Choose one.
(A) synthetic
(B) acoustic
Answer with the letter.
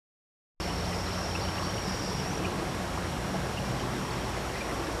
B